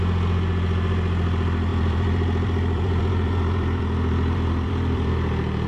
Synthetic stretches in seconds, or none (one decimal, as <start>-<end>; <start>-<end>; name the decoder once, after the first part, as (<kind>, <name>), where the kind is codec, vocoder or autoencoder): 1.7-5.1 (vocoder, BigVGAN v2)